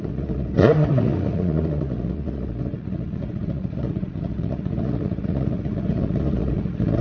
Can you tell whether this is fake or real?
fake